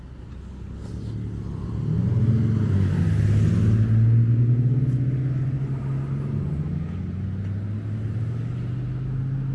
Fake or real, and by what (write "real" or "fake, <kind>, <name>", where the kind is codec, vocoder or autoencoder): real